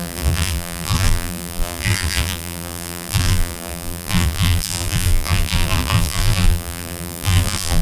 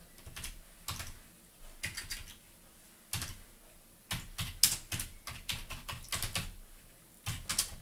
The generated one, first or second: first